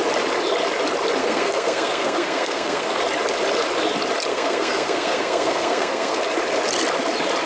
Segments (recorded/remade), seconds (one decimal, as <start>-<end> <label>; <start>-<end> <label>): 0.0-1.2 recorded; 1.2-3.0 remade; 3.0-4.3 recorded; 4.3-6.2 remade; 6.2-7.5 recorded